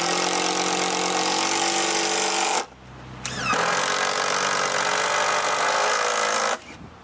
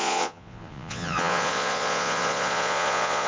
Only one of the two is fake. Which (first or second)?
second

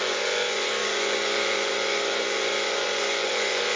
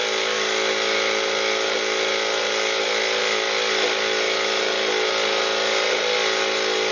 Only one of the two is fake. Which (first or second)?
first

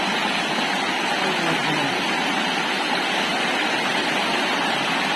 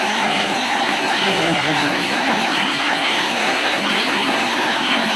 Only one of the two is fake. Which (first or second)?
second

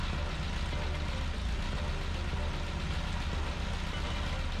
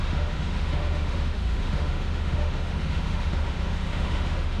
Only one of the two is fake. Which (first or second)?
second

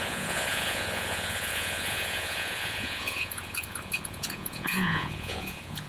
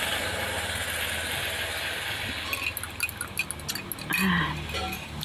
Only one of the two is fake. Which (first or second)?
first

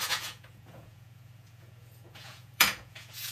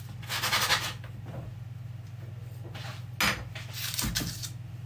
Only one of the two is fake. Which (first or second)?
first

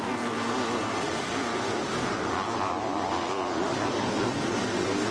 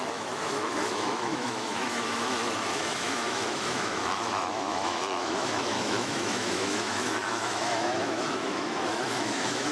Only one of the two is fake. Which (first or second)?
second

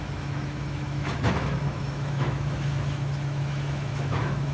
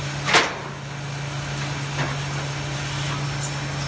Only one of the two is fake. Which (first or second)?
first